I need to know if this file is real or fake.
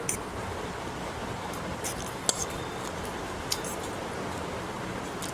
real